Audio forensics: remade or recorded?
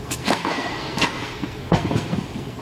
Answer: remade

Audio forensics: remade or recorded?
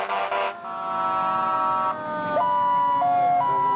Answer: recorded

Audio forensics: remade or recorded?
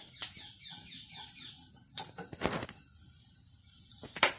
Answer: recorded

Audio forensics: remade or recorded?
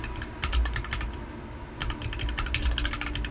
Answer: recorded